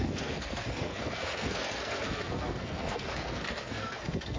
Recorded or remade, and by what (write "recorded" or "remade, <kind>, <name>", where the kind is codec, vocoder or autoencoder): remade, codec, SNAC